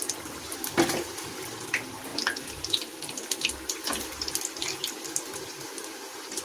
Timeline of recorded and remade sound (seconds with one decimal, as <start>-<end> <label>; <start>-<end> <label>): 0.0-6.4 recorded